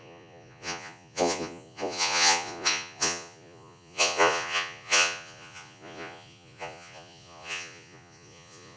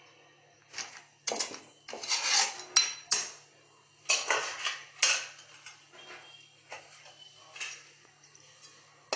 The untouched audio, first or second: second